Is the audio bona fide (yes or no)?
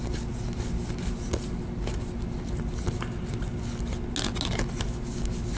yes